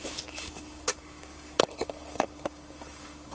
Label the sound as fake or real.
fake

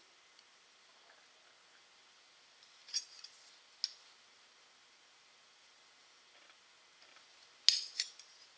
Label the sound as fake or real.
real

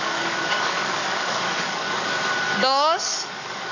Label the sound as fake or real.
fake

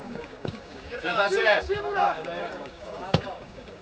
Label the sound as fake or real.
fake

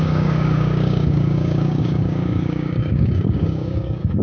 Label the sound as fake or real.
fake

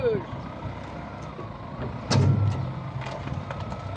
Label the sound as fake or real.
real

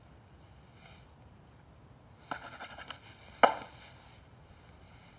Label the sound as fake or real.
real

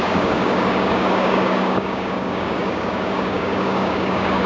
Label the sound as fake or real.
fake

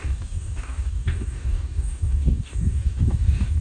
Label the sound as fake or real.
fake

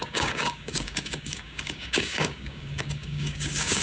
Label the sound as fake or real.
fake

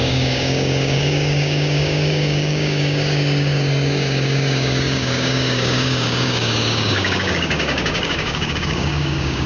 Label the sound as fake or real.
fake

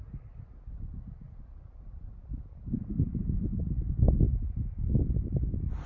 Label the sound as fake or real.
real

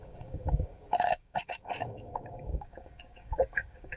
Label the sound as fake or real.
fake